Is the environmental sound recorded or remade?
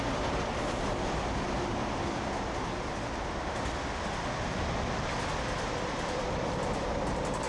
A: recorded